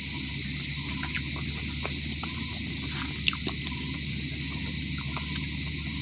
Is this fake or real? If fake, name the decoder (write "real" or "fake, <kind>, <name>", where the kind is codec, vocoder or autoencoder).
real